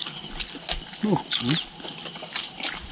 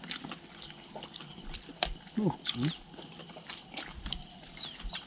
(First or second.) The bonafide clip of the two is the first